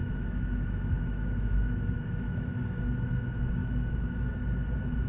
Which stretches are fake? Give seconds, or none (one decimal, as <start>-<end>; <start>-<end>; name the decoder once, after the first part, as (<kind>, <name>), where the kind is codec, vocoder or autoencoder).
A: 0.0-3.1 (autoencoder, DAC-VAE); 3.6-4.3